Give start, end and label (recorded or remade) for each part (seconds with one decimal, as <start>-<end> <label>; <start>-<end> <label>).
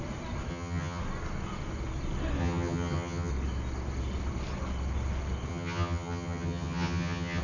0.0-0.5 recorded; 0.5-1.0 remade; 1.0-2.4 recorded; 2.4-3.3 remade; 3.3-5.5 recorded; 5.5-7.4 remade